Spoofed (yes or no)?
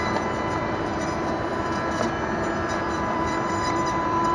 yes